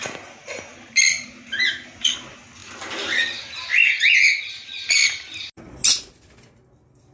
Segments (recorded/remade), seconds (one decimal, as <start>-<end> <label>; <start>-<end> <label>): 0.0-7.1 recorded